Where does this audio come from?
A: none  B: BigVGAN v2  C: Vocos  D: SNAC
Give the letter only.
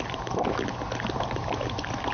A